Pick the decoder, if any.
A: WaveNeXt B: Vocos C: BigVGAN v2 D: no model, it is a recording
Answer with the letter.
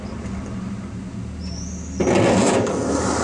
D